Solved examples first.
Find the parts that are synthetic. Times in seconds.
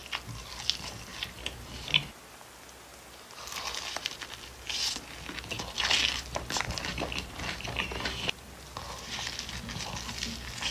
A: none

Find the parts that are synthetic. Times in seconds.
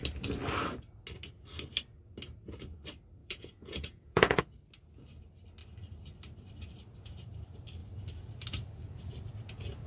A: 3.2-4.4 (vocoder, Vocos)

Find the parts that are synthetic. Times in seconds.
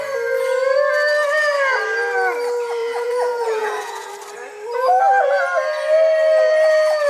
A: 2.8-4.1 (vocoder, Vocos)